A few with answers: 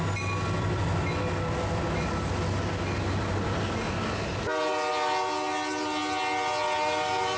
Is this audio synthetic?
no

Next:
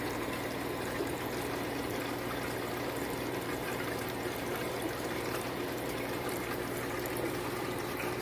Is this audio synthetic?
yes